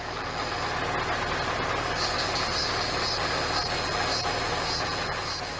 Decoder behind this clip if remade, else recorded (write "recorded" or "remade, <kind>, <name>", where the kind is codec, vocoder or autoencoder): recorded